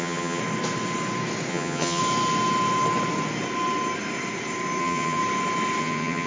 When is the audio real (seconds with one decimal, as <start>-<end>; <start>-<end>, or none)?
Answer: 0.4-1.5; 2.0-4.8; 5.2-5.8